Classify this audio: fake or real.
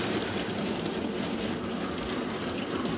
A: real